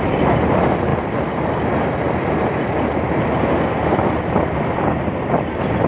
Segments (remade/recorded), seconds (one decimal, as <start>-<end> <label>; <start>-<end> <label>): 0.0-5.9 recorded